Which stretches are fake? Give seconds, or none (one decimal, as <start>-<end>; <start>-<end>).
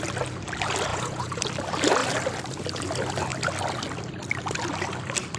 0.9-1.4